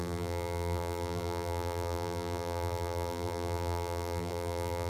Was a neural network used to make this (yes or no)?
yes